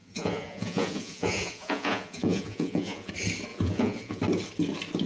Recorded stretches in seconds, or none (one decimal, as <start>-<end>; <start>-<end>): 3.1-3.5; 4.2-5.1